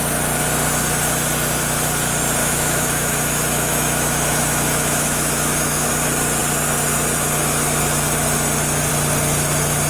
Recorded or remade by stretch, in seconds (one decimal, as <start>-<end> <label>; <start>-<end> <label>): 0.0-2.4 recorded; 2.4-5.9 remade; 5.9-9.9 recorded